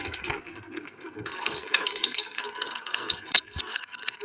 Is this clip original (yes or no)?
no